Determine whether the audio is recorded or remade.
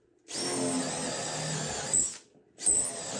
recorded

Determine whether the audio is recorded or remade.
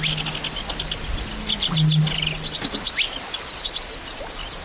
recorded